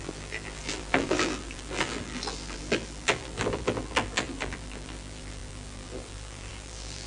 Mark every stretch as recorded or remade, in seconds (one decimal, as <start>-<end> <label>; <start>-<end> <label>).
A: 0.0-7.1 remade